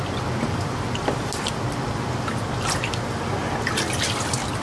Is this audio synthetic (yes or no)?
no